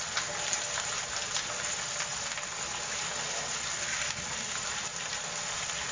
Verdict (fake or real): real